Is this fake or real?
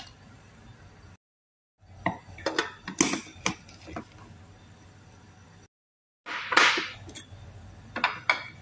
real